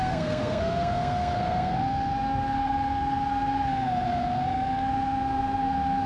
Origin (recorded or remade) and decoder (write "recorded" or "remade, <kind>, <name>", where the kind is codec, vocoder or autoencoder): remade, codec, SNAC